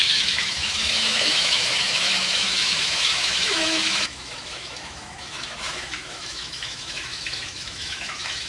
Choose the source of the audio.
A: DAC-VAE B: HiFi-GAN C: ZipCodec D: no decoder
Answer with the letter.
A